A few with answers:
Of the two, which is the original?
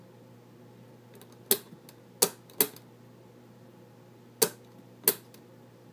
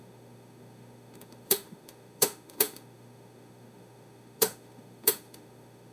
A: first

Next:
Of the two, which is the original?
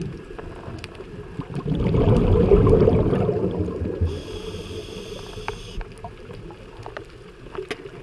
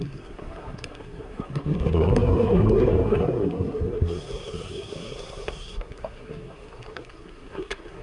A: first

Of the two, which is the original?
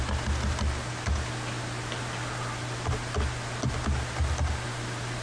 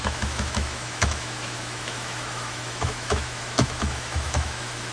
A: first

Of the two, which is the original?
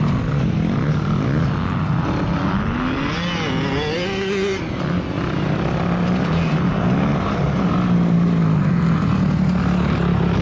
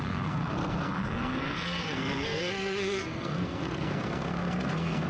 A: first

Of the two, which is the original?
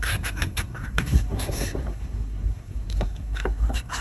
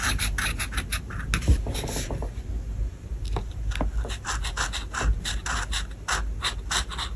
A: second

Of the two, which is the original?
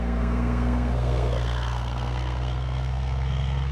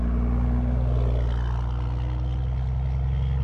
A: second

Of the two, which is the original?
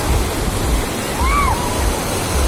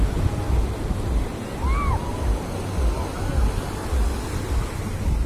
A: second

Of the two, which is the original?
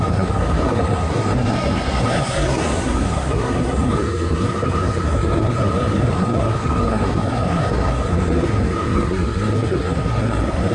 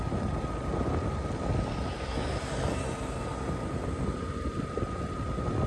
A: second